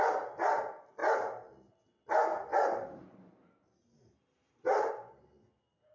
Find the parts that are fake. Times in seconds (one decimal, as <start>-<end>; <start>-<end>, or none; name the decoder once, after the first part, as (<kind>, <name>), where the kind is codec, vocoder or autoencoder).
2.5-4.9 (vocoder, BigVGAN v2)